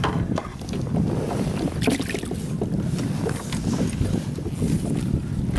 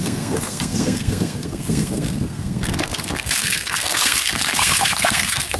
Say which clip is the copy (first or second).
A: second